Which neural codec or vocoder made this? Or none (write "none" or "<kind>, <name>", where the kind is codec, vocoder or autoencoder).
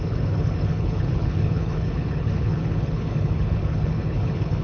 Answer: codec, HILCodec